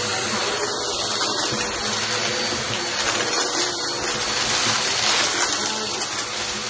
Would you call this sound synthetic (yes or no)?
no